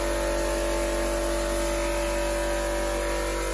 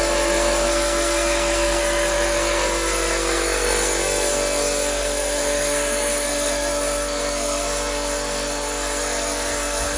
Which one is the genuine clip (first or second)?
first